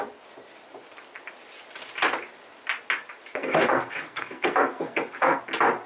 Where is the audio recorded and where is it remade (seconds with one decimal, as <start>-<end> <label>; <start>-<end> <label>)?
0.0-3.3 recorded; 3.3-5.4 remade; 5.4-5.9 recorded